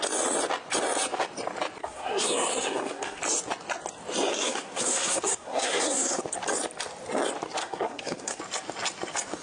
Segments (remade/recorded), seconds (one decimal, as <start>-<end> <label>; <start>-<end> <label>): 0.0-1.8 recorded; 1.8-3.2 remade; 3.2-4.3 recorded; 4.3-6.2 remade; 6.2-7.6 recorded; 7.6-8.4 remade; 8.4-9.4 recorded